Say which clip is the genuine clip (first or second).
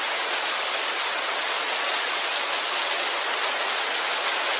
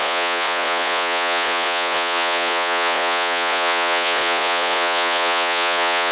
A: first